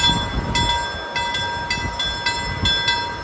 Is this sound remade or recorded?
recorded